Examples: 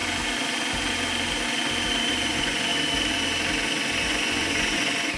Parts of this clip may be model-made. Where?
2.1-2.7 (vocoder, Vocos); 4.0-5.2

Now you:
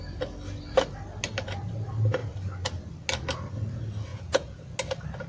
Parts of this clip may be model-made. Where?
4.1-4.6 (vocoder, Vocos)

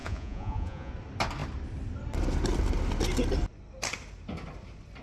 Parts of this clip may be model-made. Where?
0.0-0.9 (vocoder, Vocos)

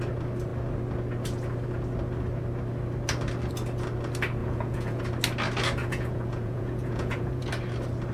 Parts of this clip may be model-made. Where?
4.4-5.0 (vocoder, Vocos); 5.8-7.5

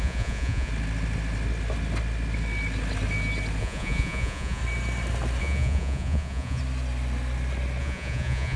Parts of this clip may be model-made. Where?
0.0-0.7 (vocoder, Vocos); 3.6-4.6; 5.4-6.6; 7.8-8.6

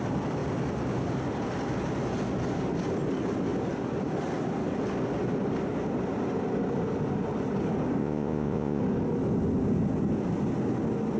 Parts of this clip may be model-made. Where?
8.0-8.8 (vocoder, Vocos)

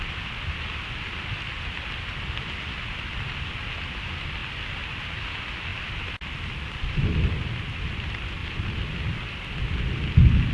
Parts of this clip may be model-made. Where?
none

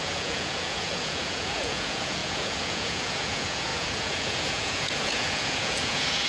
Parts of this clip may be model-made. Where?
0.0-6.3 (vocoder, Vocos)